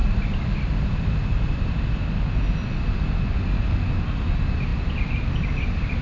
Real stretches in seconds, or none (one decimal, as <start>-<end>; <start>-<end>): 0.0-6.0